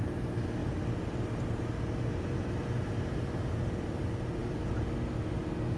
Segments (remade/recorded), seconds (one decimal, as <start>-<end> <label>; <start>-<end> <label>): 0.0-5.8 recorded